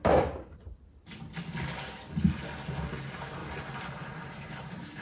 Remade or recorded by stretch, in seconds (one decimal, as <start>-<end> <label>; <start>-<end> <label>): 0.0-3.4 recorded; 3.4-5.0 remade